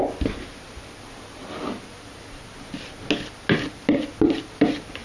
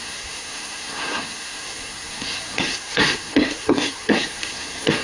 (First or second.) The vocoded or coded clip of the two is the second